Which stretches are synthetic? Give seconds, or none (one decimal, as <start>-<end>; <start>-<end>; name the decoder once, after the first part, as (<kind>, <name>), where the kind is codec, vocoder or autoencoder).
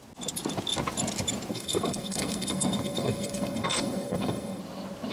1.5-4.6 (codec, SNAC)